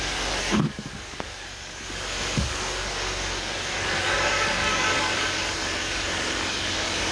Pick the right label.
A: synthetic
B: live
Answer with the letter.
A